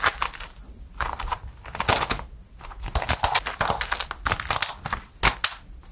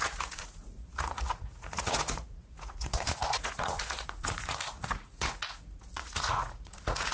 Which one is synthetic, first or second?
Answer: second